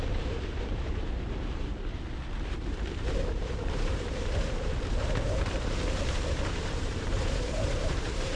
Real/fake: fake